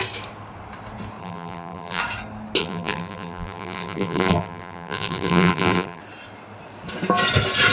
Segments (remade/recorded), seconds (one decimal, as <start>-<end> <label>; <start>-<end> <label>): 0.0-1.2 recorded; 1.2-2.0 remade; 2.0-2.6 recorded; 2.6-6.0 remade; 6.0-7.7 recorded